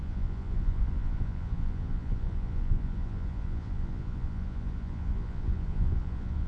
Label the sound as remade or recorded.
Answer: remade